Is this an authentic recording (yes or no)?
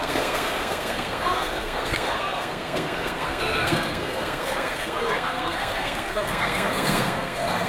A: no